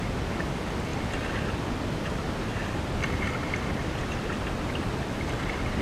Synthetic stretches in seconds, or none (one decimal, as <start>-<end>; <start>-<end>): 2.6-4.7